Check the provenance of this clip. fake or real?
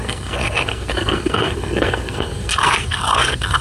fake